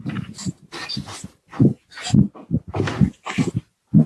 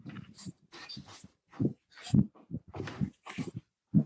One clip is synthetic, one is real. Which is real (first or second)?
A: first